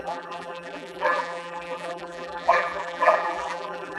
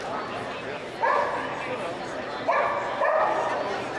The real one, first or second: second